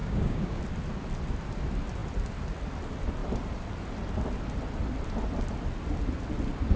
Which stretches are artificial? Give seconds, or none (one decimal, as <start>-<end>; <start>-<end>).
0.0-0.6